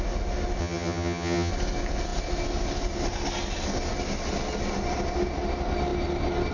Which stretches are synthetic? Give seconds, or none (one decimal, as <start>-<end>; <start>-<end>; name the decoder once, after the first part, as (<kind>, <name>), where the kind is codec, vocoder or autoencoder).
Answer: 0.6-1.5 (vocoder, HiFi-GAN)